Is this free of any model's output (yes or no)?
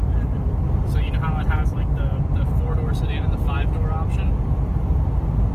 yes